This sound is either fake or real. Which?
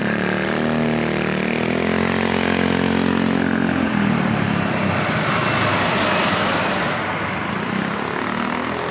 real